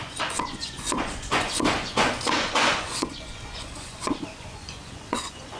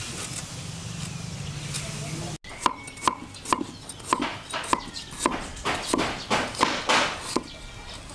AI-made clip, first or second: first